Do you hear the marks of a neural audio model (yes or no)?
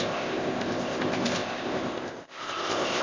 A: yes